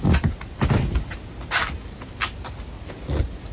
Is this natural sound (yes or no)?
yes